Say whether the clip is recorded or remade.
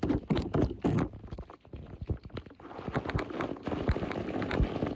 recorded